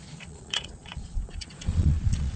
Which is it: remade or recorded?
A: remade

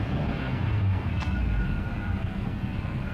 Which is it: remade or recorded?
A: remade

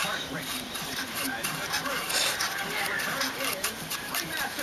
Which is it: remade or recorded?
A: remade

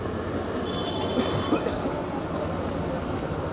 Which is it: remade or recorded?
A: recorded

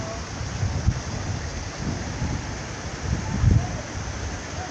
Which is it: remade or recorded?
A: recorded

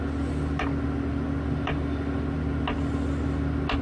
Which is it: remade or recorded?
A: recorded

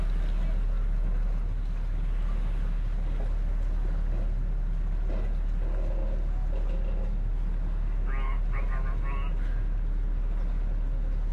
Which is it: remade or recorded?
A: recorded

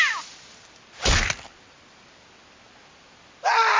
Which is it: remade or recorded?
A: recorded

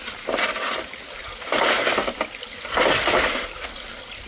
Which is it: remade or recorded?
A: recorded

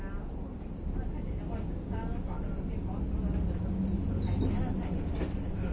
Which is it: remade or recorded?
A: recorded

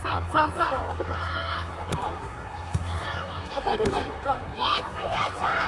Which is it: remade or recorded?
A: remade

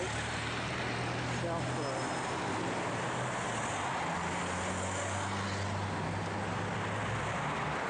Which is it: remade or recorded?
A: recorded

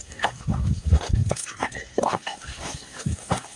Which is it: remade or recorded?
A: remade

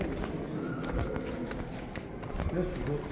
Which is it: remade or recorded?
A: recorded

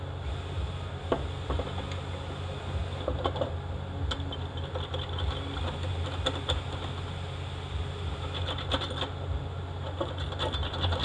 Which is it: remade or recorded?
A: recorded